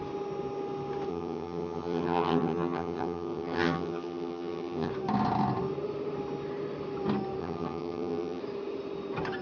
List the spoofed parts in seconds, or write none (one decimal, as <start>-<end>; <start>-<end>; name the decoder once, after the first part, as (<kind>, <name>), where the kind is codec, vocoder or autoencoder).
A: 1.1-4.9 (vocoder, HiFi-GAN); 7.4-8.4